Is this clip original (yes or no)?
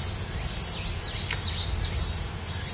yes